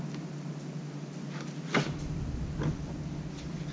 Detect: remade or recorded recorded